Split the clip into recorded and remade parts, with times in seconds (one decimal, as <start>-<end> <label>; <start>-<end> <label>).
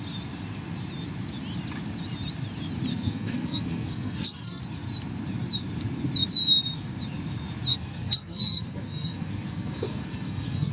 0.0-2.9 recorded; 2.9-4.6 remade; 4.6-7.7 recorded; 7.7-10.7 remade